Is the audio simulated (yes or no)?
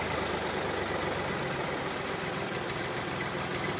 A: no